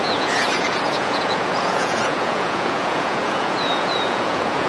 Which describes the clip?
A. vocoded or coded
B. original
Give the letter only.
A